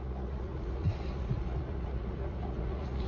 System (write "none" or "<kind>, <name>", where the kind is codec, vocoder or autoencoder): vocoder, Vocos